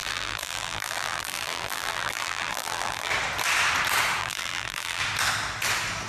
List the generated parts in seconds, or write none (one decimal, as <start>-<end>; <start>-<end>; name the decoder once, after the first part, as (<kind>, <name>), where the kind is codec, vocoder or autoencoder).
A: 0.0-3.1 (vocoder, BigVGAN v2); 4.2-5.0